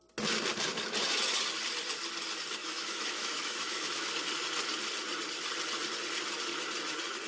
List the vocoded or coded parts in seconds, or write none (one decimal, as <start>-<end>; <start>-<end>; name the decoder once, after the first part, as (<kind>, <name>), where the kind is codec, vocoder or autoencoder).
2.6-4.1 (autoencoder, DAC-VAE)